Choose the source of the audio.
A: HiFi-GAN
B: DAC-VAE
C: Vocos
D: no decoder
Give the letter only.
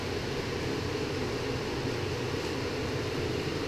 D